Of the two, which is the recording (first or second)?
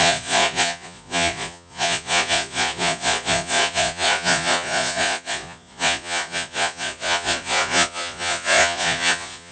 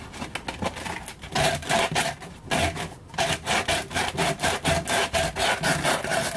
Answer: second